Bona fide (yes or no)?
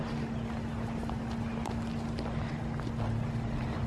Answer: yes